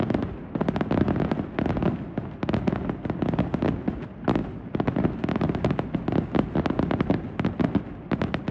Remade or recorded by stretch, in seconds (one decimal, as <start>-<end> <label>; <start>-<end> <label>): 0.0-8.5 recorded